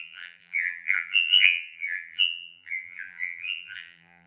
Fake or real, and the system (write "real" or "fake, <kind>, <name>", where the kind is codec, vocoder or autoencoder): fake, vocoder, BigVGAN v2